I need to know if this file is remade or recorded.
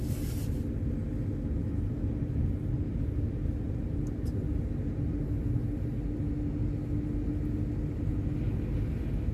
recorded